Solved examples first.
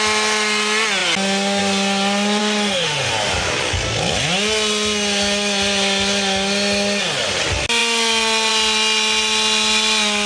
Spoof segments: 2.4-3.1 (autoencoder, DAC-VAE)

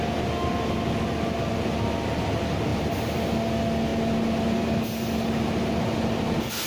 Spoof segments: 2.7-3.2 (vocoder, BigVGAN v2)

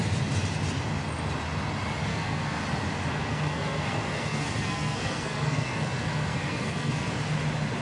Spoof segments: 2.1-2.6 (codec, SNAC); 3.1-7.1

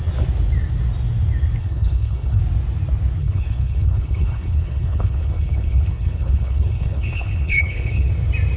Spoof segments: 1.6-2.4 (codec, HILCodec); 3.2-8.1

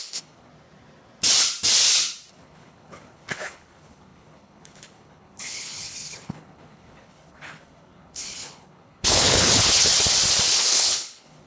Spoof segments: 0.0-0.5 (codec, HILCodec); 2.3-9.9; 10.5-11.5